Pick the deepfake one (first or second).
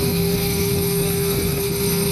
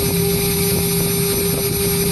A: first